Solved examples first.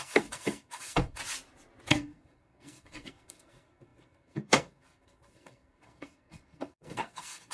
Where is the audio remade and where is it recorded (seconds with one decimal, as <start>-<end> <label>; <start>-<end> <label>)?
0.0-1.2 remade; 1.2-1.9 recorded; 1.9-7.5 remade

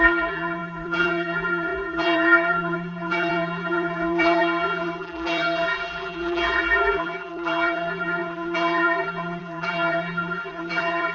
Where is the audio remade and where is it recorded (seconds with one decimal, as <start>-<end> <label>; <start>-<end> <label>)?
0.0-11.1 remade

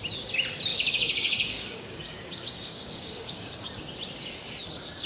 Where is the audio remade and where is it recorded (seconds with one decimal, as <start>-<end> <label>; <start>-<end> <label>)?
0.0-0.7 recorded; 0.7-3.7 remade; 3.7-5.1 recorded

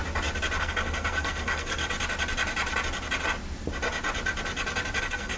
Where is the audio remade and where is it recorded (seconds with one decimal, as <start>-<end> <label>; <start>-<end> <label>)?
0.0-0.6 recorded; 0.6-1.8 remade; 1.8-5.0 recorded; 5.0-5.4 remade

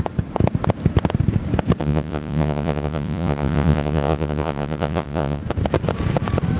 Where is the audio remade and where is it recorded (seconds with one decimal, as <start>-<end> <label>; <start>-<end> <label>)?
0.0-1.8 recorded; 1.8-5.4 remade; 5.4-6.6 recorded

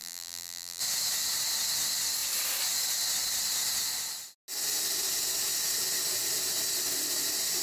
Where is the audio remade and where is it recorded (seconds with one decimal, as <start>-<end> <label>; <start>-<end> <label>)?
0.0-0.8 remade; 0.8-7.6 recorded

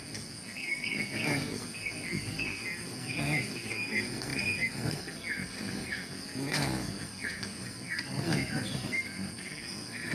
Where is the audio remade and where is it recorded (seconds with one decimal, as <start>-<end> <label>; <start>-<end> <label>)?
0.0-10.1 remade

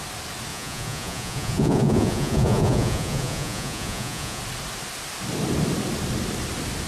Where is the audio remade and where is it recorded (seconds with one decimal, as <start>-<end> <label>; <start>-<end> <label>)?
0.0-0.5 recorded; 0.5-4.4 remade; 4.4-6.9 recorded